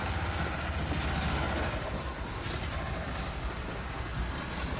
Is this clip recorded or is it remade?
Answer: recorded